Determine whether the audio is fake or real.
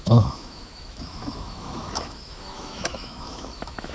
fake